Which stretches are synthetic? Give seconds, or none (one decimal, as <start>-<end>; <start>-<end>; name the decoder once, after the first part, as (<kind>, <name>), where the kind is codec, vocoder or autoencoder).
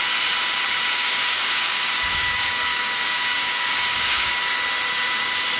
0.9-4.3 (codec, DAC)